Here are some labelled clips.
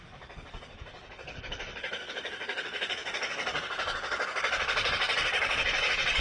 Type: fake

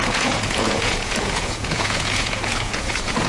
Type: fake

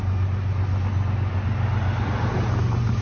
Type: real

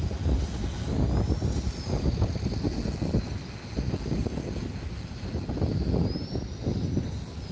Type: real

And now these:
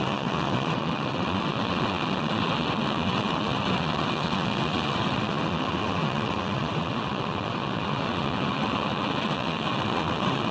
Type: fake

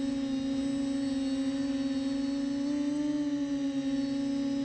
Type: real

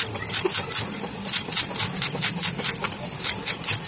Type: real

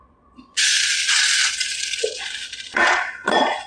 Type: fake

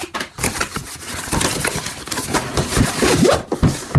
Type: real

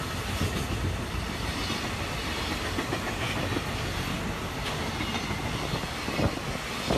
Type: real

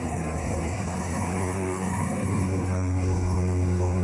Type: fake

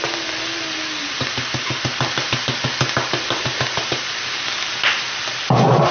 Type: real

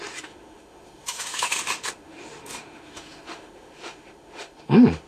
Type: fake